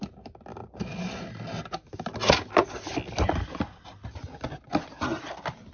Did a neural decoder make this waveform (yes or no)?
no